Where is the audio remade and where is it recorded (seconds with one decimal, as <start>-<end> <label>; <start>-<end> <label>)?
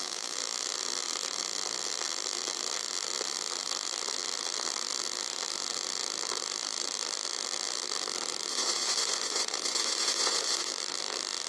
0.0-8.5 recorded; 8.5-10.7 remade; 10.7-11.5 recorded